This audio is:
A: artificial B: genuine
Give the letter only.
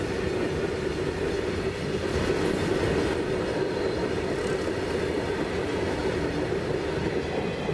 B